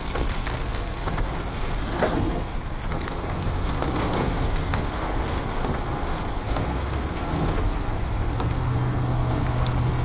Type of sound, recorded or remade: remade